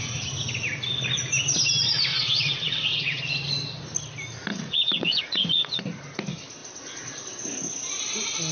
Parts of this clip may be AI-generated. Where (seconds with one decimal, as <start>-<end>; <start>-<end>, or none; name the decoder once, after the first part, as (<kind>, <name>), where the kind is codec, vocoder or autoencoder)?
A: 2.1-3.2 (vocoder, WaveNeXt); 4.5-5.8